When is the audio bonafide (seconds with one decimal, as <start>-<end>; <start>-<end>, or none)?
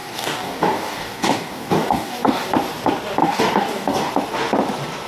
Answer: 2.5-3.2; 4.1-5.1